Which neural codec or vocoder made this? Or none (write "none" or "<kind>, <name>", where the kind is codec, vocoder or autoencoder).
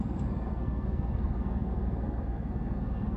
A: codec, SNAC